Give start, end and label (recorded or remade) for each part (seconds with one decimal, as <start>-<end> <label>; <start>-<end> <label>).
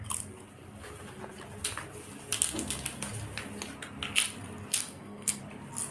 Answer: 0.0-4.8 recorded; 4.8-5.4 remade; 5.4-5.9 recorded